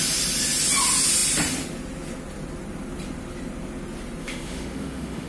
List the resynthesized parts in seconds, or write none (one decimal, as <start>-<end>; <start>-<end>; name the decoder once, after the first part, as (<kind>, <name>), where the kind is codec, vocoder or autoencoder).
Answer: 4.2-5.3 (autoencoder, DAC-VAE)